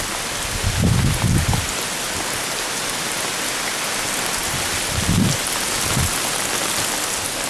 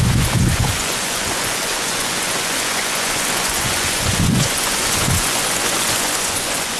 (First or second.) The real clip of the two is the first